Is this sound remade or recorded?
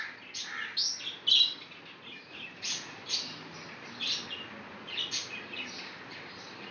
recorded